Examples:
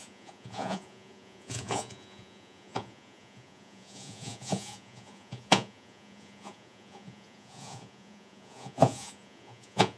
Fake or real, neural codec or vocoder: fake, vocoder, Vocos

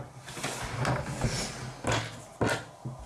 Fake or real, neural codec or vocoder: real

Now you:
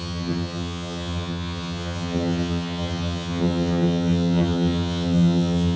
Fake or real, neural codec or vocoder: fake, vocoder, HiFi-GAN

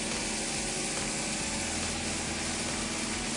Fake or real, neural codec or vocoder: real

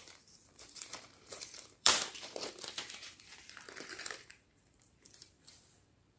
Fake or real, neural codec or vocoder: fake, vocoder, BigVGAN v2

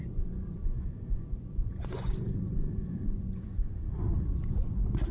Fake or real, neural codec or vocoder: fake, vocoder, Vocos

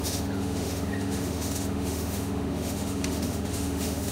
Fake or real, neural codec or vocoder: fake, autoencoder, DAC-VAE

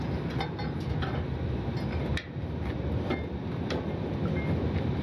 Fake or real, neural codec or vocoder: real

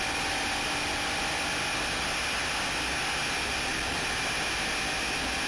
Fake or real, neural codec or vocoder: real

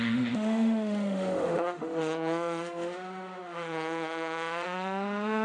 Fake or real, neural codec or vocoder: fake, autoencoder, DAC-VAE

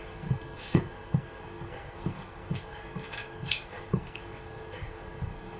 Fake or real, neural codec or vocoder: fake, codec, SNAC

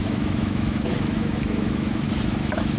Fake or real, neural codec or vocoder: fake, autoencoder, DAC-VAE